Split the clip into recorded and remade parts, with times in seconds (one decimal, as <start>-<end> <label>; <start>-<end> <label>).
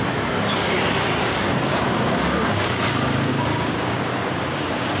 0.0-1.3 recorded; 1.3-2.8 remade; 2.8-3.3 recorded; 3.3-5.0 remade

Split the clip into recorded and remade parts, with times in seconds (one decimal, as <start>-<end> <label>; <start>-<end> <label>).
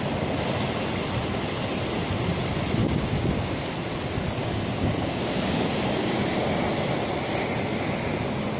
0.0-2.8 recorded; 2.8-3.5 remade; 3.5-4.4 recorded; 4.4-6.2 remade; 6.2-8.6 recorded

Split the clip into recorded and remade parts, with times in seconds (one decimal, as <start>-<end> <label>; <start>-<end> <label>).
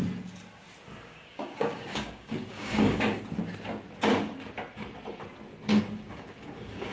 0.0-0.9 recorded; 0.9-3.2 remade; 3.2-5.7 recorded; 5.7-6.9 remade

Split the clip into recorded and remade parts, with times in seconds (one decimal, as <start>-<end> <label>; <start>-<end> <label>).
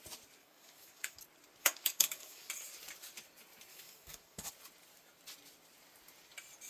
0.0-0.4 recorded; 0.4-1.2 remade; 1.2-1.6 recorded; 1.6-2.5 remade; 2.5-3.7 recorded; 3.7-4.5 remade; 4.5-6.7 recorded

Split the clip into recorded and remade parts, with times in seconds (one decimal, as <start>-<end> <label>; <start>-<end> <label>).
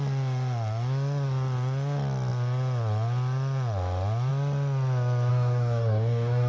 0.0-5.3 recorded; 5.3-6.5 remade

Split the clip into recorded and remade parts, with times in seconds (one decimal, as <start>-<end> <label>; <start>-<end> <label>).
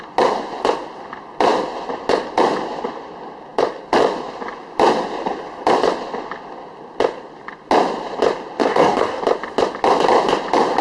0.0-8.6 recorded; 8.6-9.2 remade; 9.2-10.8 recorded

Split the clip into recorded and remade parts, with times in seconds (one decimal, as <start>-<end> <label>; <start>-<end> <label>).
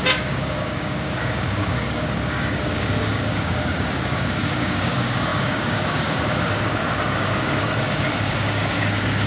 0.0-9.3 remade